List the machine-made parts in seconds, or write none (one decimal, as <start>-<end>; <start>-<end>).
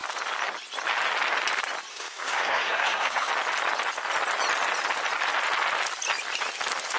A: 1.9-3.3